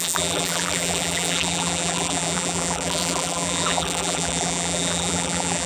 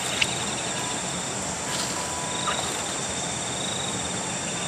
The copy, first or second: first